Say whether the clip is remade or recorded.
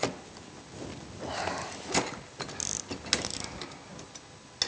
recorded